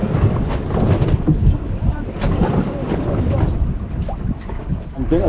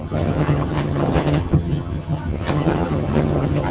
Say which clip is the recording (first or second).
first